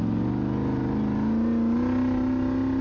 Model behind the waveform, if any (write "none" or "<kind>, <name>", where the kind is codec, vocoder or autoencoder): none